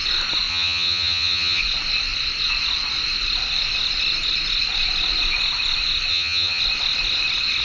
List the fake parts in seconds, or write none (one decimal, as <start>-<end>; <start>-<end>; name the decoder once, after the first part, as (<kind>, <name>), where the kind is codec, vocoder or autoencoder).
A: 0.5-1.6 (vocoder, HiFi-GAN); 6.1-6.6